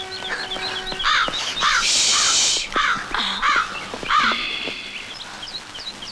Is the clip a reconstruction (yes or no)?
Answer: no